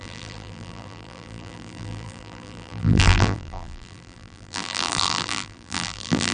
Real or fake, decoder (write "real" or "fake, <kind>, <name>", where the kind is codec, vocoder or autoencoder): fake, vocoder, BigVGAN v2